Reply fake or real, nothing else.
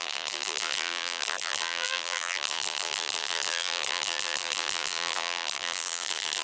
fake